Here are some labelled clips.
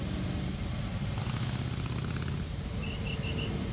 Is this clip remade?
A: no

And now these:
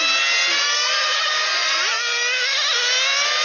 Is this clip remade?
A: no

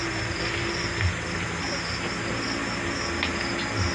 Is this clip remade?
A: no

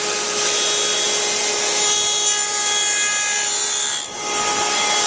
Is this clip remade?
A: no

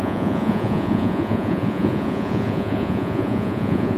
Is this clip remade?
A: yes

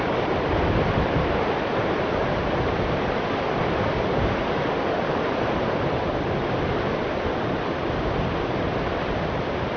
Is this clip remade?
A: yes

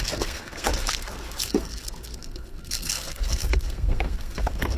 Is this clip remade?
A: yes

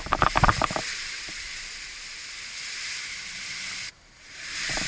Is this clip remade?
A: yes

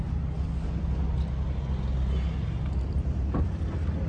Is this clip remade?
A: no